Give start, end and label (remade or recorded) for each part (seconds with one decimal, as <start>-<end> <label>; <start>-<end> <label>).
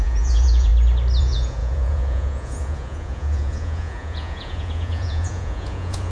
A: 0.0-0.7 remade; 0.7-1.2 recorded; 1.2-6.1 remade